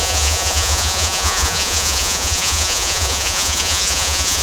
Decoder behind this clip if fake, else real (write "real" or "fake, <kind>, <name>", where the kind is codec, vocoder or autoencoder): fake, vocoder, Vocos